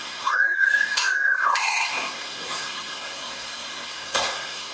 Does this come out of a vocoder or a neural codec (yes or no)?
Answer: yes